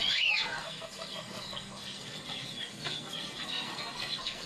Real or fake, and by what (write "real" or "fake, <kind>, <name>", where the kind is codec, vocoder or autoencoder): fake, codec, SNAC